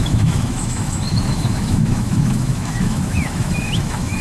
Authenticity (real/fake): fake